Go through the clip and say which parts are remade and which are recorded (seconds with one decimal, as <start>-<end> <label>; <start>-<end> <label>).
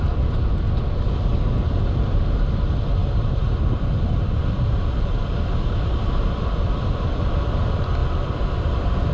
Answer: 0.0-3.0 recorded; 3.0-4.8 remade; 4.8-9.1 recorded